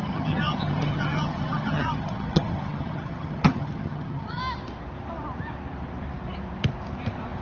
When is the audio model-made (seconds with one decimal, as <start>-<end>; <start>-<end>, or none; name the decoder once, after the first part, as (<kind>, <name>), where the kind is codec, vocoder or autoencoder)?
0.0-4.4 (vocoder, HiFi-GAN)